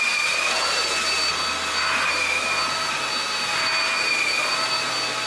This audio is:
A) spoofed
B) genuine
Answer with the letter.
B